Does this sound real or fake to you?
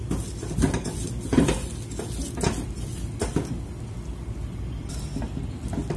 real